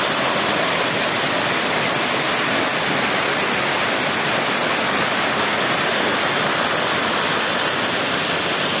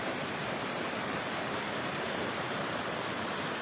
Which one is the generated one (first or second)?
second